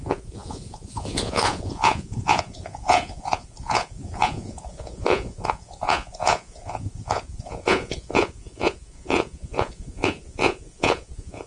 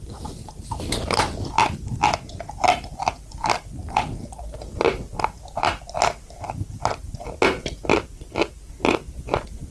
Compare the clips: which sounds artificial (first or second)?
first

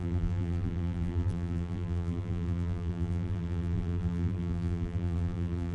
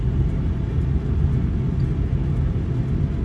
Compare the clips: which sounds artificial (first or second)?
first